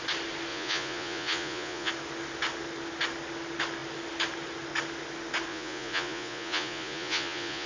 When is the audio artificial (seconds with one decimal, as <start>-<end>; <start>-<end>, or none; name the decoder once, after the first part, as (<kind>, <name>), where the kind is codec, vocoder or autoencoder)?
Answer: 0.5-1.9 (vocoder, Vocos); 5.5-7.7